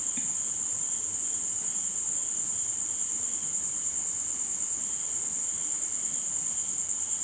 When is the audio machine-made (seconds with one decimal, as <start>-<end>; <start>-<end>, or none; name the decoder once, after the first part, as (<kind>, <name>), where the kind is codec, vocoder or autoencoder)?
none